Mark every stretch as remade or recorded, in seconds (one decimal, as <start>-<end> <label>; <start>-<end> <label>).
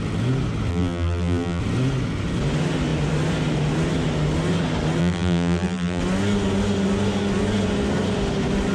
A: 0.0-0.7 recorded; 0.7-1.6 remade; 1.6-5.0 recorded; 5.0-6.0 remade; 6.0-8.7 recorded